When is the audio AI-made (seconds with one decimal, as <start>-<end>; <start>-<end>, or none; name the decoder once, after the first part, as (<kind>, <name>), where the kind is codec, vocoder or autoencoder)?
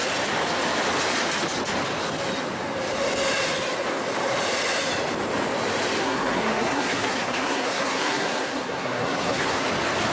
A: 6.0-9.7 (codec, SNAC)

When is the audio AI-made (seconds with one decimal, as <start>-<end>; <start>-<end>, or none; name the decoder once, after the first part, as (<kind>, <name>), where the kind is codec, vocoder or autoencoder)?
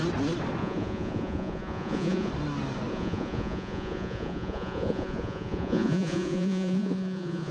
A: 0.6-2.3 (vocoder, Vocos); 2.9-7.5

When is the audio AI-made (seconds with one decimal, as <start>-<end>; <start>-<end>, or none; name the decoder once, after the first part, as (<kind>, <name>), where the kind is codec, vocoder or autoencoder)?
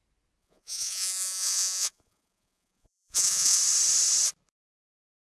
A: 0.4-3.6 (vocoder, Vocos)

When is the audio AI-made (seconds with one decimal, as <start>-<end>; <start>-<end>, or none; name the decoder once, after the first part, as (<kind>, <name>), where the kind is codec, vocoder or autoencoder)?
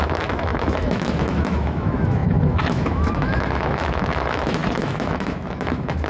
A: 0.0-6.1 (autoencoder, DAC-VAE)